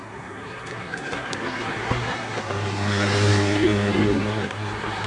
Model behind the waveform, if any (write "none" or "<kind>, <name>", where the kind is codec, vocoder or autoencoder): codec, SNAC